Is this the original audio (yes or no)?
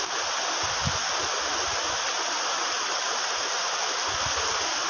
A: yes